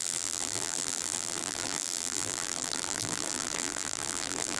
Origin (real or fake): fake